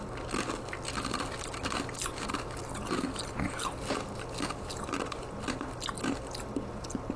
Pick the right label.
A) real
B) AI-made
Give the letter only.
A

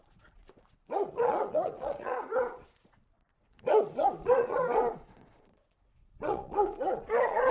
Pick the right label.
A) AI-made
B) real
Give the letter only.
A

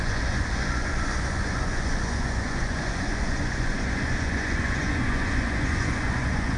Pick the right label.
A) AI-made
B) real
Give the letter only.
A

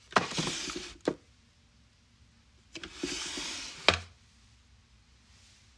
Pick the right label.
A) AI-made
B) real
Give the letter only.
B